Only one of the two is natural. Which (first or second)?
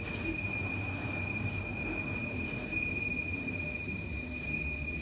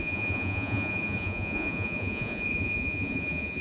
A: first